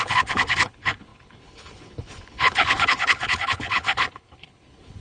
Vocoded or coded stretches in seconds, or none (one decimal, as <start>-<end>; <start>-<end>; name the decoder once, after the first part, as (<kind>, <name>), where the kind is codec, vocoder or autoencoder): 0.0-5.0 (codec, HILCodec)